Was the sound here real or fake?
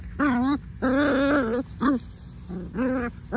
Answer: real